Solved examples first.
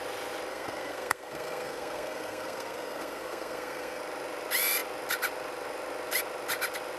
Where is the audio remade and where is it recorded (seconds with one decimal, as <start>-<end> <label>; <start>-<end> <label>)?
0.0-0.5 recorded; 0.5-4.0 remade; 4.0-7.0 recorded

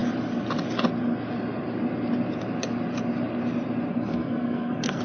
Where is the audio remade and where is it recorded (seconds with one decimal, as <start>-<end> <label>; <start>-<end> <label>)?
0.0-3.9 recorded; 3.9-5.0 remade

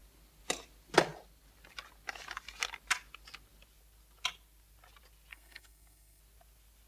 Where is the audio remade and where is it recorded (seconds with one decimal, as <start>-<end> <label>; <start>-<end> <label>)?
0.0-5.3 recorded; 5.3-6.2 remade; 6.2-6.9 recorded

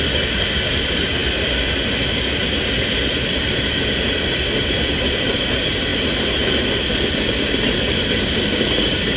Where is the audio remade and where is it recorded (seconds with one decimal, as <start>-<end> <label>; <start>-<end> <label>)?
0.0-9.2 recorded

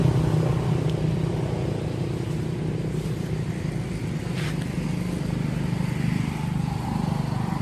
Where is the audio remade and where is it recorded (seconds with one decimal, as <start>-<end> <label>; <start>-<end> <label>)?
0.0-7.6 recorded

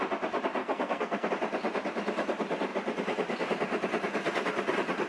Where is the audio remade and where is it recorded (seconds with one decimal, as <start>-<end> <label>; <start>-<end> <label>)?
0.0-0.6 recorded; 0.6-1.3 remade; 1.3-5.1 recorded